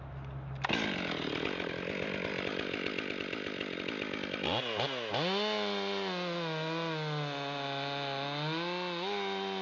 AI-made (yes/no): no